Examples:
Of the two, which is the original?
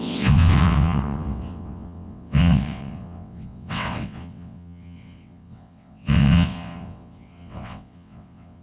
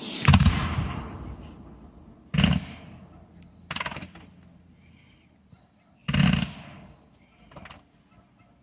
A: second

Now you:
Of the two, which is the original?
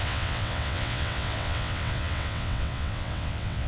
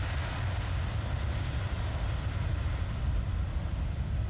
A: second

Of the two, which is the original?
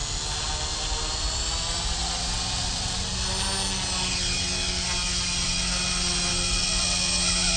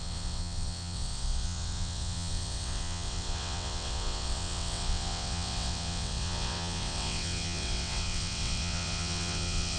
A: first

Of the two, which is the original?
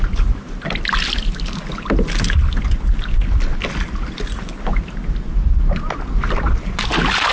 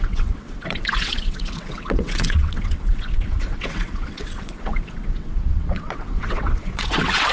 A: first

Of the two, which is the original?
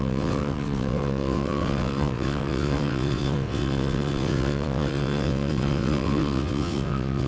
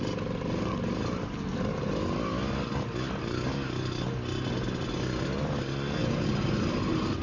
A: second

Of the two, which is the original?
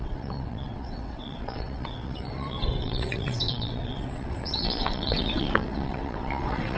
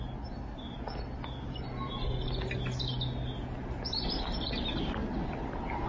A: second